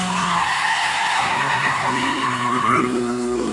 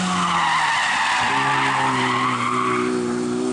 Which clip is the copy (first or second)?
first